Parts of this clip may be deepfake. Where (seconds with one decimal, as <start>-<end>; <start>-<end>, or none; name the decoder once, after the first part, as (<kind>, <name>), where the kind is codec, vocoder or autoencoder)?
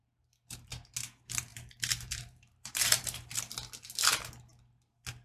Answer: 1.5-3.4 (vocoder, BigVGAN v2)